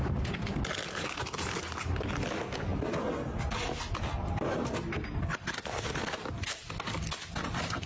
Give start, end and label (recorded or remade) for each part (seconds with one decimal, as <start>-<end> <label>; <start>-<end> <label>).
0.0-7.9 recorded